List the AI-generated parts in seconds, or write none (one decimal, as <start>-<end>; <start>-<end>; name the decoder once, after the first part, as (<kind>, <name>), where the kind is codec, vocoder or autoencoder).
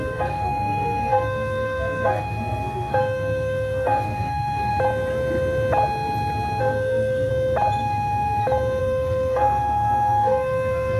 0.0-4.7 (codec, SNAC); 6.6-7.3; 8.8-11.0